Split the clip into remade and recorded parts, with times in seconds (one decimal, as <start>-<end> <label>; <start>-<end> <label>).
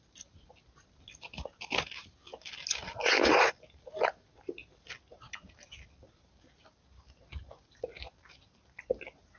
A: 0.0-9.4 recorded